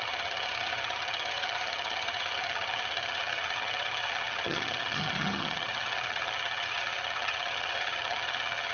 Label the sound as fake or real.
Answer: fake